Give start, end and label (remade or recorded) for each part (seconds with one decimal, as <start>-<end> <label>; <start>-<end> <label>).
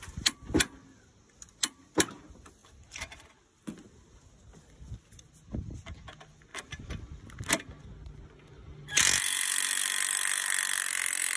0.0-2.6 recorded; 2.6-3.4 remade; 3.4-6.5 recorded; 6.5-7.4 remade; 7.4-11.4 recorded